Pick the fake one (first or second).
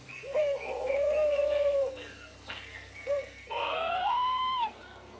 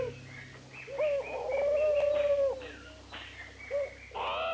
first